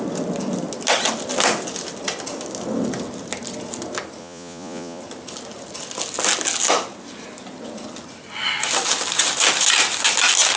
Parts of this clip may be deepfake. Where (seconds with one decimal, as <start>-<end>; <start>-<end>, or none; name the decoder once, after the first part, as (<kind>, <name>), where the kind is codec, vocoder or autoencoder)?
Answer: 4.2-5.0 (vocoder, Vocos)